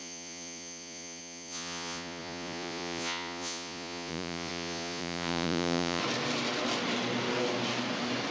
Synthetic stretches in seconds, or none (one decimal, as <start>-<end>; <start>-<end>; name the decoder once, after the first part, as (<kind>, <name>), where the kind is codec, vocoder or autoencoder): 0.0-6.0 (vocoder, Vocos)